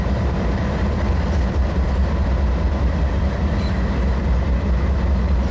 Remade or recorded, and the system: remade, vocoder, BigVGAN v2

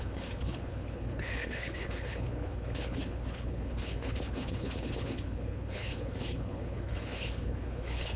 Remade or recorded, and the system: remade, codec, HILCodec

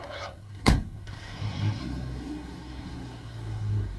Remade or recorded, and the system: remade, codec, SNAC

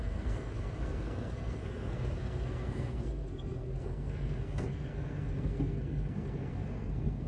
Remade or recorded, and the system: remade, codec, SNAC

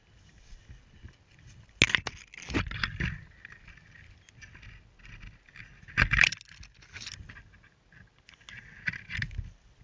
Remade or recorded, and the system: recorded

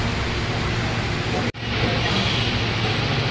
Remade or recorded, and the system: recorded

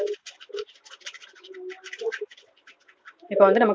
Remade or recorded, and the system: recorded